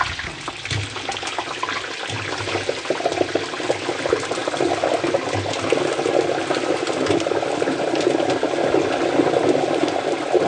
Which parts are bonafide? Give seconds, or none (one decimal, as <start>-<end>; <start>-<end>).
0.0-10.5